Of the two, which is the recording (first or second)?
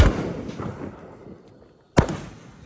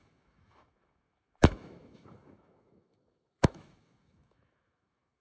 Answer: first